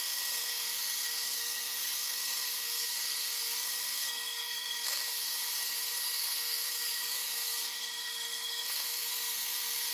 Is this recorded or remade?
remade